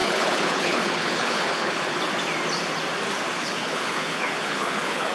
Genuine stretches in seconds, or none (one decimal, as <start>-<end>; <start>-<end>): 2.0-3.4